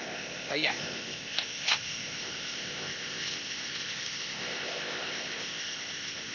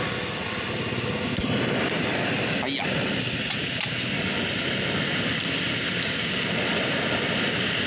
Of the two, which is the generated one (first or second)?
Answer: first